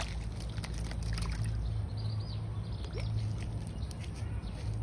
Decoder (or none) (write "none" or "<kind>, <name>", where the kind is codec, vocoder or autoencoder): none